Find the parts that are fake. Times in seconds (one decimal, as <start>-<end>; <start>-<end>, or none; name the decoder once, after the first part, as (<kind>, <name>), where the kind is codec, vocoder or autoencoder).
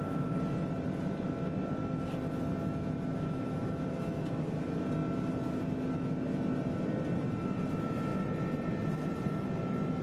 2.5-4.7 (autoencoder, DAC-VAE)